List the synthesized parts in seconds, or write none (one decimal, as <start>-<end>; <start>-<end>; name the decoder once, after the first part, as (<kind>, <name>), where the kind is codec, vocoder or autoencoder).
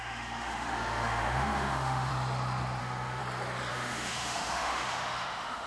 0.0-2.1 (autoencoder, DAC-VAE); 2.8-3.2; 3.7-5.7